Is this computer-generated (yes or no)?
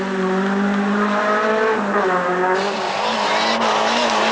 no